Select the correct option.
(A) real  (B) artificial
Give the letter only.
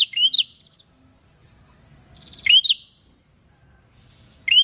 A